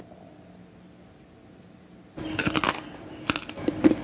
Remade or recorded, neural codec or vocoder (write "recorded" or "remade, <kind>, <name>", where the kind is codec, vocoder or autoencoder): recorded